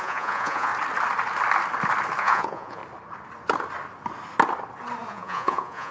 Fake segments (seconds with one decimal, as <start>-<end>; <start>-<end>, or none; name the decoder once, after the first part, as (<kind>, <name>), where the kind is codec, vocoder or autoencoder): 0.0-0.7 (vocoder, Vocos); 2.2-2.8; 5.1-5.9